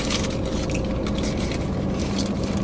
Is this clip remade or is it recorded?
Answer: recorded